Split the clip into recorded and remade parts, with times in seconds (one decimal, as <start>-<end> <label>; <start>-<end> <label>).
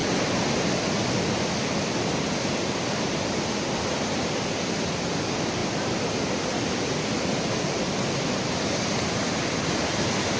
0.0-3.7 remade; 3.7-10.4 recorded